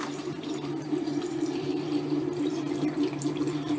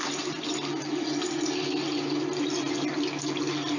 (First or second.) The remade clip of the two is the first